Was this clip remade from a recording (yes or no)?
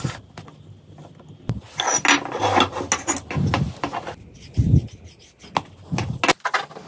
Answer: no